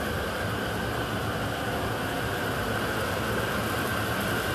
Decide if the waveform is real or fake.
real